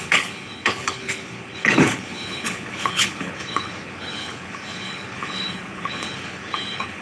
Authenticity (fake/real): fake